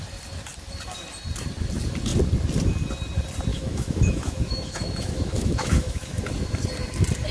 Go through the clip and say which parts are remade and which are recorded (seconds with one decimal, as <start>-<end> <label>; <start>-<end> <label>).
0.0-3.5 recorded; 3.5-6.2 remade; 6.2-7.3 recorded